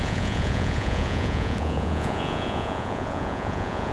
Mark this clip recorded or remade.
remade